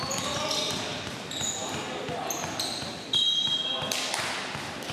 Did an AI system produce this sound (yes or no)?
no